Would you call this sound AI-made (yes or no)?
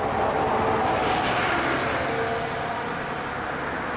no